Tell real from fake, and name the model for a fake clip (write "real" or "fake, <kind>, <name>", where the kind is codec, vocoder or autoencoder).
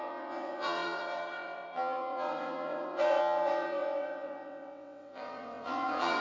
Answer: fake, vocoder, WaveNeXt